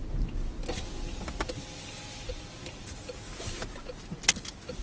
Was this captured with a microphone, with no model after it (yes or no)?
yes